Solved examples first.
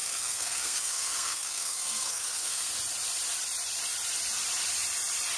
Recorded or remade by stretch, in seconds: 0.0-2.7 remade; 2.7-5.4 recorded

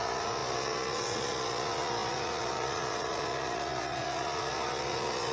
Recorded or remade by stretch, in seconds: 0.0-5.3 remade

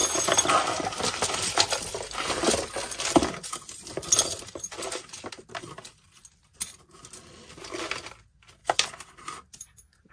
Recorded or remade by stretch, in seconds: 0.0-8.6 recorded; 8.6-10.1 remade

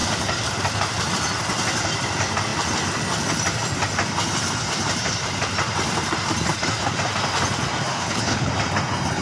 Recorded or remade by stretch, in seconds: 0.0-7.9 recorded; 7.9-8.5 remade; 8.5-9.2 recorded

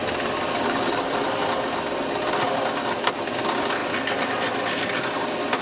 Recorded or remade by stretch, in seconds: 0.0-5.6 recorded

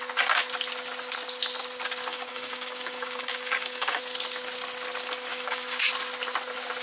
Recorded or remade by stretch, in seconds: 0.0-2.1 recorded; 2.1-4.0 remade; 4.0-5.3 recorded; 5.3-5.9 remade; 5.9-6.8 recorded

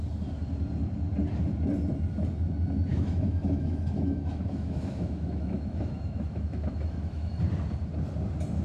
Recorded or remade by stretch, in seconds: 0.0-2.9 recorded; 2.9-7.3 remade; 7.3-8.6 recorded

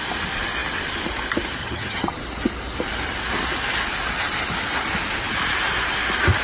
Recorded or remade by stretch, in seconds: 0.0-1.6 recorded; 1.6-2.2 remade; 2.2-6.4 recorded